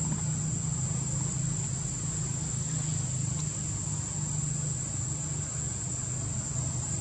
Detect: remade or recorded recorded